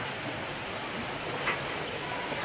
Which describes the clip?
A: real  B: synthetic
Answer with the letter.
A